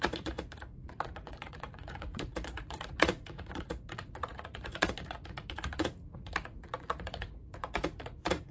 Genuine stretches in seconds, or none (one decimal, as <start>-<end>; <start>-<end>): none

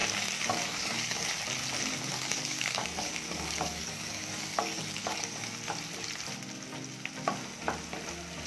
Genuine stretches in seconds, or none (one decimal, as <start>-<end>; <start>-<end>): 1.3-2.1; 5.5-8.5

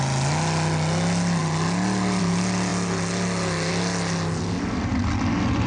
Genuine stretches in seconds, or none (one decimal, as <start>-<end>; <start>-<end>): 0.0-5.7

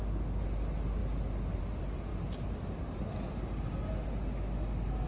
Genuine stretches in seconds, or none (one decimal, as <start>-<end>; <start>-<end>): 0.0-5.1